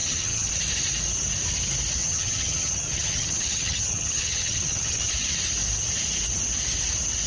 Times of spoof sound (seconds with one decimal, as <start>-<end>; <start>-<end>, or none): 0.0-0.5; 2.0-5.1